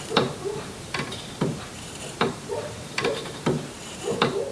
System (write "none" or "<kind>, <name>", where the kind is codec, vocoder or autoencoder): vocoder, BigVGAN v2